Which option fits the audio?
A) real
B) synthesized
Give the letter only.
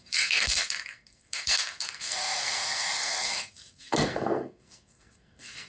B